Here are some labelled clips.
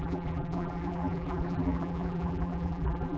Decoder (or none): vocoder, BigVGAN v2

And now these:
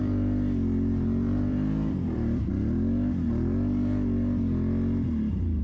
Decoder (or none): vocoder, BigVGAN v2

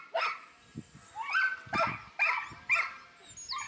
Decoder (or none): none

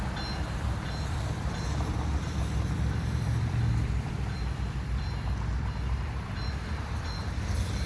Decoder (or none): vocoder, BigVGAN v2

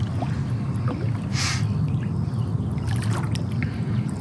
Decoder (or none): none